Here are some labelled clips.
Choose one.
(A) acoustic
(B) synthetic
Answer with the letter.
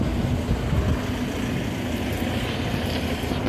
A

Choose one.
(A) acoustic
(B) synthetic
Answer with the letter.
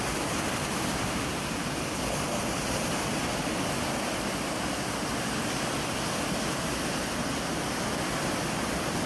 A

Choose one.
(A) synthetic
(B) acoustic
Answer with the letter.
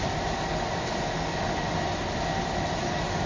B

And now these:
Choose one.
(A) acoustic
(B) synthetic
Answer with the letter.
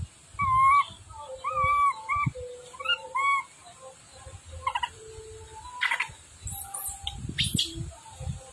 A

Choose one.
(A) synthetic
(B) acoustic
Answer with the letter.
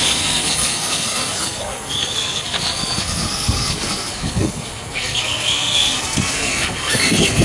A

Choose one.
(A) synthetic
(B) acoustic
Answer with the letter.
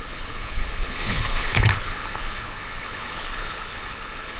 A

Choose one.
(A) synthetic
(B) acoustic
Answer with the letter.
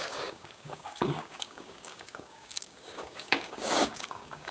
A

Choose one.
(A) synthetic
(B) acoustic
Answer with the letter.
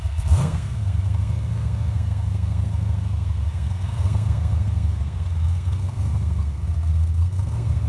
A